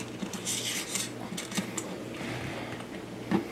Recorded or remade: recorded